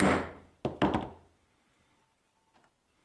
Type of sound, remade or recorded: recorded